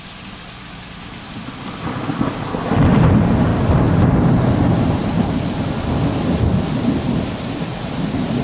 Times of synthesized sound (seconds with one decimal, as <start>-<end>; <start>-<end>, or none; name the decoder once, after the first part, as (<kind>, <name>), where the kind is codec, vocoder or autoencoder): none